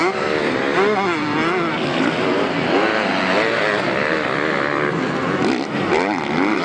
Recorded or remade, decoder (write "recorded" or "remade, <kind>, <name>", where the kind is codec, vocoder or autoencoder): recorded